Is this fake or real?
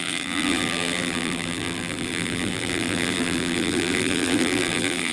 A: fake